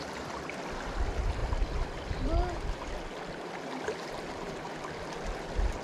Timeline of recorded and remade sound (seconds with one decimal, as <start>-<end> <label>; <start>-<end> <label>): 0.0-5.8 recorded